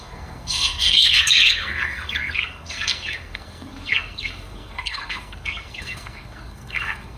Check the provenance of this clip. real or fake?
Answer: fake